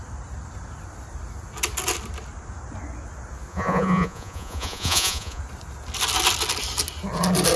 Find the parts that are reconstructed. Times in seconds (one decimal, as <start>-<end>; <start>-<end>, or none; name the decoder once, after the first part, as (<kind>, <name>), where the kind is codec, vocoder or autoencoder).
3.5-5.4 (vocoder, Vocos)